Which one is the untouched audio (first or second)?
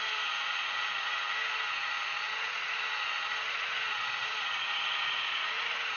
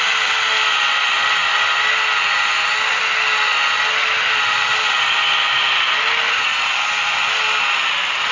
second